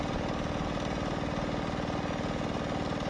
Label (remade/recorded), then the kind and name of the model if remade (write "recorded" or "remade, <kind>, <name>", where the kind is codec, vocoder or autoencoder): recorded